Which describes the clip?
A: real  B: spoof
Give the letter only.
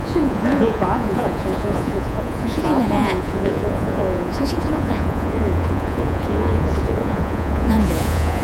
B